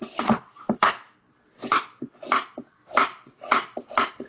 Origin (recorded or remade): remade